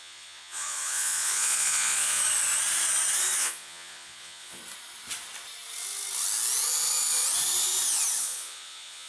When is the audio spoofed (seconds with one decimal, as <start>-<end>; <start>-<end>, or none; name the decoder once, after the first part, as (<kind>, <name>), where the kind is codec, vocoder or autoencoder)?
0.0-2.2 (vocoder, Vocos); 3.4-4.6; 8.2-9.1